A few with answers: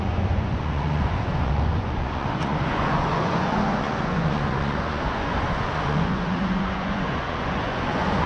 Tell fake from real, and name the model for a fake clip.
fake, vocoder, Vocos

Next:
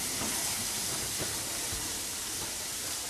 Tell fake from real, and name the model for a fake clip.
fake, vocoder, BigVGAN v2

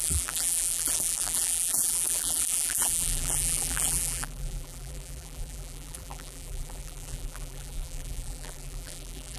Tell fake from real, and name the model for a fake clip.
fake, vocoder, BigVGAN v2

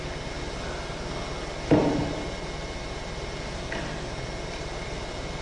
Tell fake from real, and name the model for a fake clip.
real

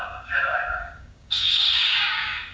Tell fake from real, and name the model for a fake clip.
fake, codec, DAC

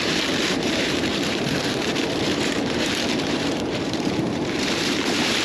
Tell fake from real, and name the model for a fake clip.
fake, vocoder, BigVGAN v2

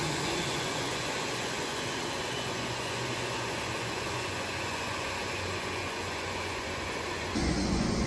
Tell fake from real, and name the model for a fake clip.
fake, vocoder, Vocos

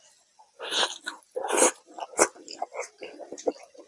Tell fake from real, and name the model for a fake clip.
real